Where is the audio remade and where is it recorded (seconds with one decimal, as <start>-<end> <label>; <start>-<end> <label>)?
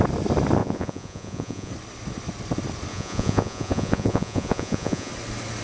0.0-0.6 recorded; 0.6-1.7 remade; 1.7-2.9 recorded; 2.9-5.1 remade; 5.1-5.6 recorded